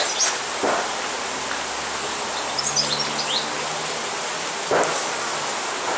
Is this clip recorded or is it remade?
recorded